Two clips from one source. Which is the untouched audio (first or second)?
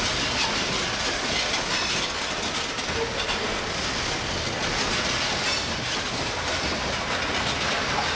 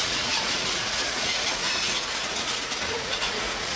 first